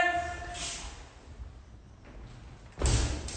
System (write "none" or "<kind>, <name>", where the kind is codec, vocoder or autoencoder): none